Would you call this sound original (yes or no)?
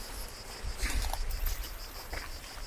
yes